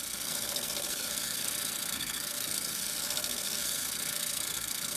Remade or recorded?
remade